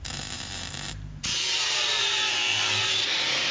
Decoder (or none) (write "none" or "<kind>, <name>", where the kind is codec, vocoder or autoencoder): vocoder, BigVGAN v2